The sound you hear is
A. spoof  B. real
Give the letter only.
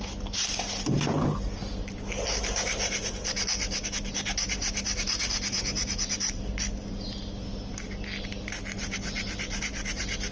B